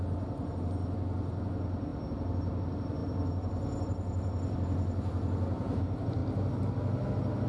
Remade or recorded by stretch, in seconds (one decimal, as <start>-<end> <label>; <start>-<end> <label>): 0.0-3.0 recorded; 3.0-5.8 remade; 5.8-7.5 recorded

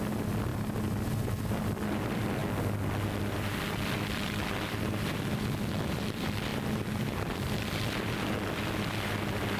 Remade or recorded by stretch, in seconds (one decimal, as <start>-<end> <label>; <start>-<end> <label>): 0.0-0.5 remade; 0.5-1.3 recorded; 1.3-2.4 remade; 2.4-3.2 recorded; 3.2-9.6 remade